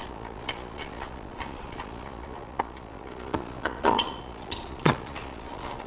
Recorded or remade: remade